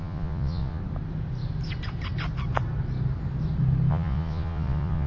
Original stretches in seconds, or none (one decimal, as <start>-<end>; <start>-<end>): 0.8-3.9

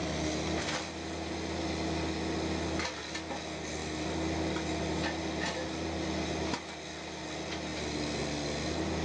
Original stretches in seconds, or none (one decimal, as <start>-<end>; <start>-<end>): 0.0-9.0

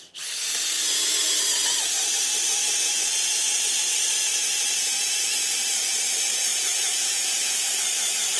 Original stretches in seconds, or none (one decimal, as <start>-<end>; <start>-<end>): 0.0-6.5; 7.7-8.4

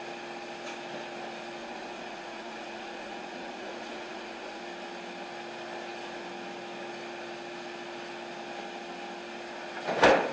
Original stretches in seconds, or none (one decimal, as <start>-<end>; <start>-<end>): 0.0-1.6; 4.6-10.3